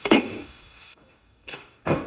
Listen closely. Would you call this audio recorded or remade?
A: remade